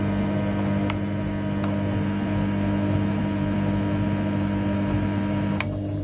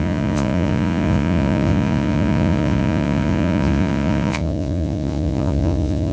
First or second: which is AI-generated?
second